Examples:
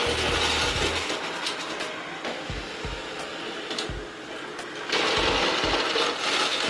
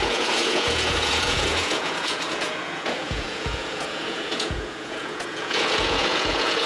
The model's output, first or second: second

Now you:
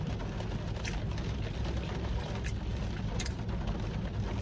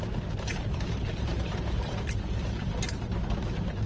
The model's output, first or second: second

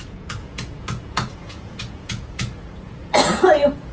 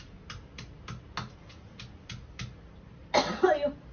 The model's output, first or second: first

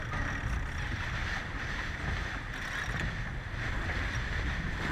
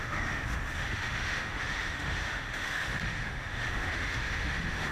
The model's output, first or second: second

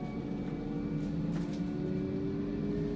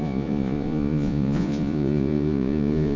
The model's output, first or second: second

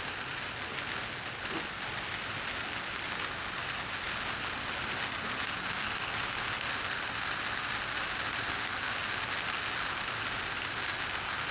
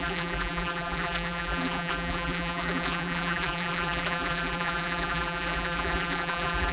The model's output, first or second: second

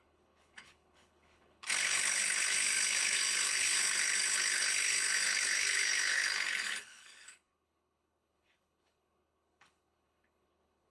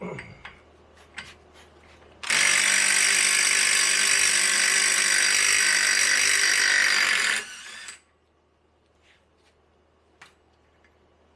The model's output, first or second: first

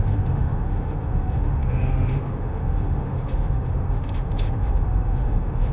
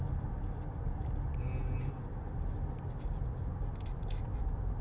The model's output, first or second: first